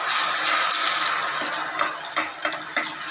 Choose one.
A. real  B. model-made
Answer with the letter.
A